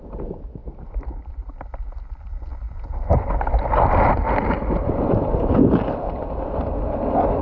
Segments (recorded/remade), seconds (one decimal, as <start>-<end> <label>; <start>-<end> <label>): 0.0-7.4 recorded

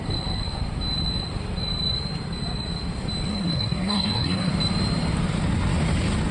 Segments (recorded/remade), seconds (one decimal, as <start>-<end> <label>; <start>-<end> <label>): 0.0-3.3 recorded; 3.3-4.5 remade; 4.5-6.3 recorded

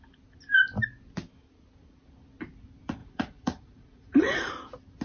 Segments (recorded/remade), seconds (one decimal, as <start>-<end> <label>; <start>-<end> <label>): 0.0-3.0 recorded; 3.0-4.5 remade; 4.5-5.0 recorded

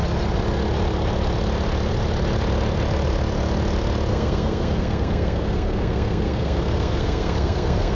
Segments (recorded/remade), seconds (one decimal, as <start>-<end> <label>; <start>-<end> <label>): 0.0-4.1 recorded; 4.1-7.9 remade

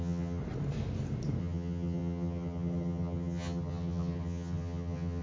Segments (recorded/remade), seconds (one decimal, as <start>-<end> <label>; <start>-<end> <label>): 0.0-0.4 remade; 0.4-1.4 recorded; 1.4-5.2 remade

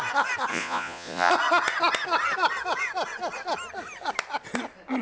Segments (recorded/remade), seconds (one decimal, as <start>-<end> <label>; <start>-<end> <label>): 0.0-0.5 recorded; 0.5-1.3 remade; 1.3-5.0 recorded